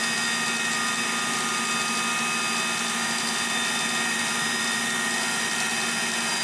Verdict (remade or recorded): recorded